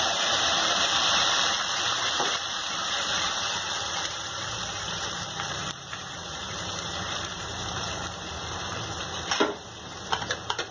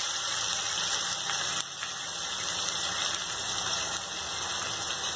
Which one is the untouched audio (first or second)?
second